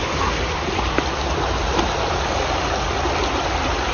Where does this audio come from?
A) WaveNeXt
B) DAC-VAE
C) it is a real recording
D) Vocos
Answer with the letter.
C